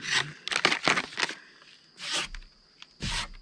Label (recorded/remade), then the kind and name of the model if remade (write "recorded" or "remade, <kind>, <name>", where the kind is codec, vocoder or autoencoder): recorded